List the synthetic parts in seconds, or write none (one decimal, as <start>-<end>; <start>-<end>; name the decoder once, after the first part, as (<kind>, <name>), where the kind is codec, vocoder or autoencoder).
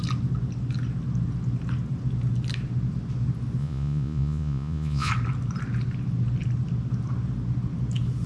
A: 3.6-5.1 (vocoder, Vocos)